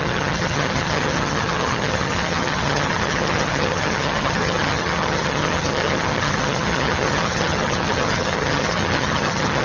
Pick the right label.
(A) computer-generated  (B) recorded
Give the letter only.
A